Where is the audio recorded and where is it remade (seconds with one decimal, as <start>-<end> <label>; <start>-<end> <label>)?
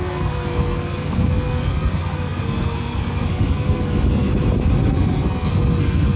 0.0-4.3 remade; 4.3-4.9 recorded; 4.9-6.2 remade